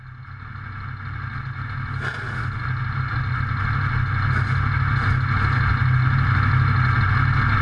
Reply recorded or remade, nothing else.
recorded